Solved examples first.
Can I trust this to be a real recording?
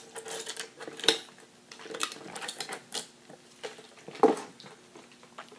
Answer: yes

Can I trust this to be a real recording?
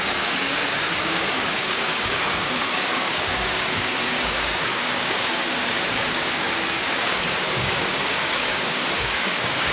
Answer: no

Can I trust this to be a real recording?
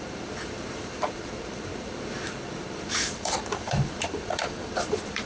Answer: no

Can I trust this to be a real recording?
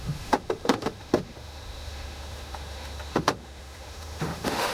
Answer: no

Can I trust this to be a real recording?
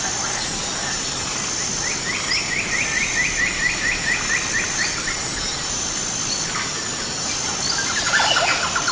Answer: yes